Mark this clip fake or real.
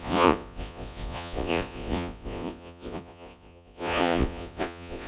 fake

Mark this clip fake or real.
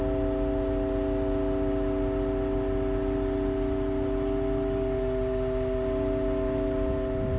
real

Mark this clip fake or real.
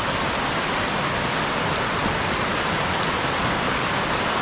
real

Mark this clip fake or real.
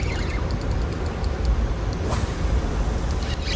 real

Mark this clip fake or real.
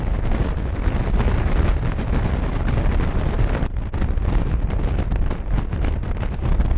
real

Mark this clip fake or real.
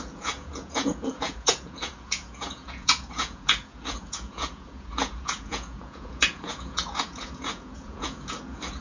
fake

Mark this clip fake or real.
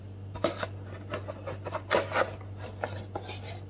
real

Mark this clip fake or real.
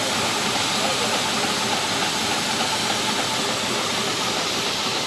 real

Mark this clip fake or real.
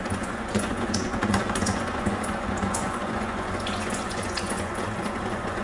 fake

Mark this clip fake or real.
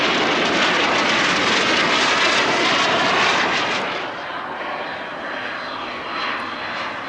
real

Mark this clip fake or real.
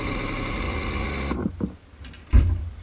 real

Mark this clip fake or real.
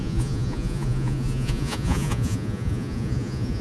fake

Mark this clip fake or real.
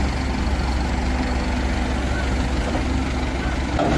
real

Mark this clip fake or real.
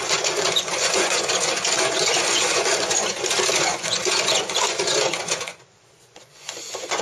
fake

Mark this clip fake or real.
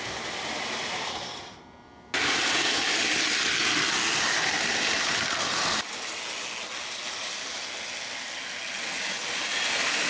real